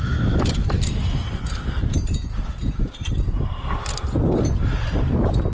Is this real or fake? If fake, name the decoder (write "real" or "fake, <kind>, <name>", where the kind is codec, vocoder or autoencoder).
real